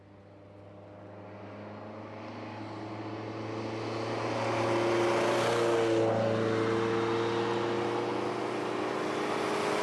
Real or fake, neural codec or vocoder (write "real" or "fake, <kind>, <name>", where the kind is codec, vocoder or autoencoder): real